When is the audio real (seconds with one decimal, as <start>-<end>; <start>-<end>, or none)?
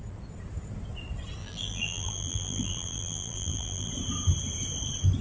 0.0-1.4; 3.9-5.2